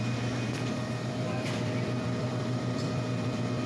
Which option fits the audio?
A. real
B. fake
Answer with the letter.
B